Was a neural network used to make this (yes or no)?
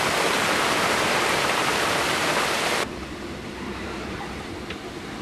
yes